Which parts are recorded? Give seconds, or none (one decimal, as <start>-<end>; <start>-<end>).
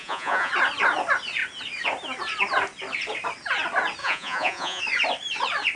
0.5-4.0; 4.8-5.8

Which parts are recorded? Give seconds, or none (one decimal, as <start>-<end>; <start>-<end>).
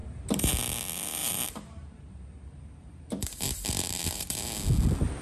0.5-1.2; 4.3-5.2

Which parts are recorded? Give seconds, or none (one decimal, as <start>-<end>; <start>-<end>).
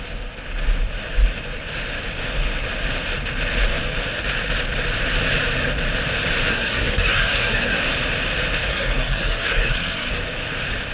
0.0-6.5; 7.8-8.7; 10.1-10.9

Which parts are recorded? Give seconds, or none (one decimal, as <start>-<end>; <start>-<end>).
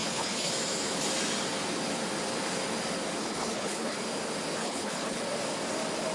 0.5-3.2; 4.0-4.6; 5.2-6.1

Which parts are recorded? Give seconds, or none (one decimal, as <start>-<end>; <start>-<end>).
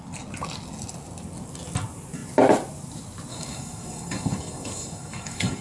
0.0-3.3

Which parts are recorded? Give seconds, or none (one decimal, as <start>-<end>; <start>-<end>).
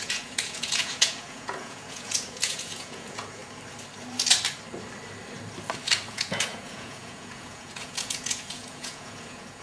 3.4-6.1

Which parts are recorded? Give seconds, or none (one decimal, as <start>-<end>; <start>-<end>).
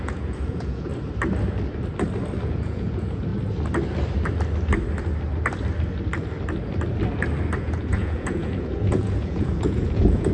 0.9-2.5; 3.3-7.6